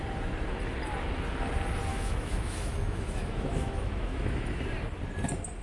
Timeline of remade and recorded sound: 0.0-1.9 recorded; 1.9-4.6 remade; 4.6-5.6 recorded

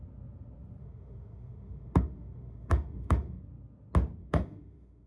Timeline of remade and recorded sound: 0.0-0.8 recorded; 0.8-3.4 remade; 3.4-4.2 recorded; 4.2-5.1 remade

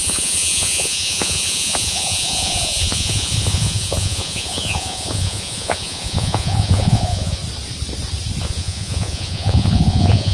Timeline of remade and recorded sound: 0.0-7.4 remade; 7.4-8.4 recorded; 8.4-10.3 remade